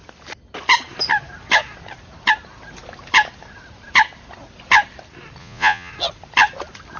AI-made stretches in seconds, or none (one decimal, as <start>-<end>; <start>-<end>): 5.4-5.9